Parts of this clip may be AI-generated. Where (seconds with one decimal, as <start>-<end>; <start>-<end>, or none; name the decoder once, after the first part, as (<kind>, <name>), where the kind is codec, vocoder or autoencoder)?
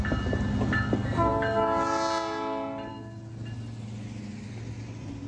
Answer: none